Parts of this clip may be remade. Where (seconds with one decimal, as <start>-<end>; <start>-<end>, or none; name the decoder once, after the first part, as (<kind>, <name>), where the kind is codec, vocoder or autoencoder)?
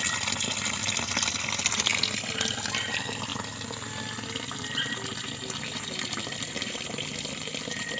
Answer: none